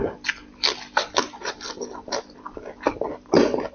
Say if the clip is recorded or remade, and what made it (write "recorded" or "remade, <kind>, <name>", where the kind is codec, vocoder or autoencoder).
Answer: recorded